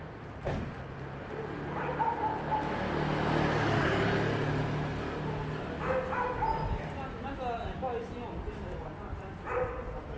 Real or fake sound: real